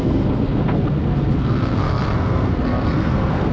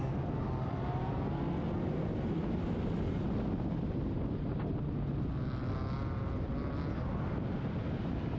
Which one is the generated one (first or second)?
first